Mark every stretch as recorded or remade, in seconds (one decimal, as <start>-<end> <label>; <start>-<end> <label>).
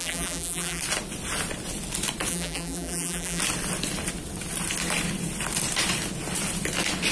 0.0-0.8 remade; 0.8-2.3 recorded; 2.3-3.4 remade; 3.4-7.1 recorded